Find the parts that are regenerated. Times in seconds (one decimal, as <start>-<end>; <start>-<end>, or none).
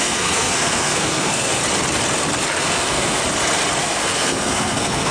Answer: 0.0-1.6; 2.6-3.2; 3.8-5.1